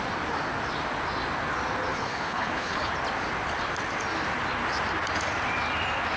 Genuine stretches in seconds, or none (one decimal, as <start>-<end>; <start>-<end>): 0.0-1.9; 2.9-6.2